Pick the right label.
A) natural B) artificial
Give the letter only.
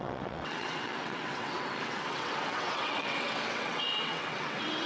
B